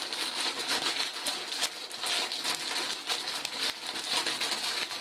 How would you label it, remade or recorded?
recorded